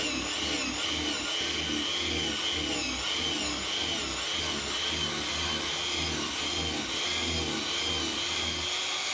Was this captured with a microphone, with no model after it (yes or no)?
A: yes